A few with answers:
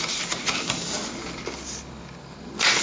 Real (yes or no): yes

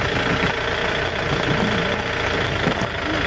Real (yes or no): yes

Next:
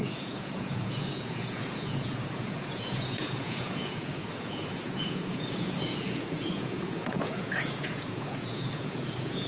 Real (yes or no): no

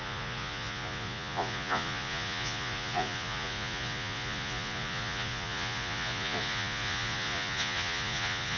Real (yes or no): no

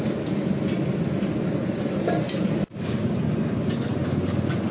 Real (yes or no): yes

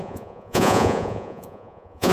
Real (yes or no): no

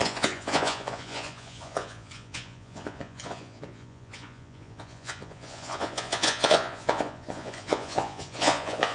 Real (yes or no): no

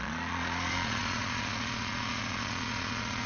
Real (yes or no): no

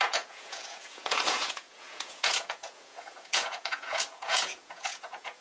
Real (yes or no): no